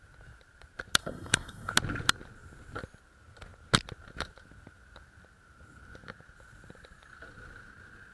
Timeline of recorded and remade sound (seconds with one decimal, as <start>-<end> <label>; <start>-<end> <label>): 0.0-1.0 recorded; 1.0-1.7 remade; 1.7-8.1 recorded